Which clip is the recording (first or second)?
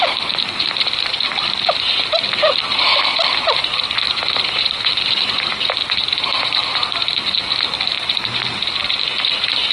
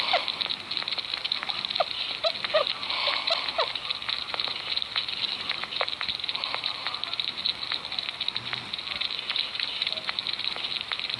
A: second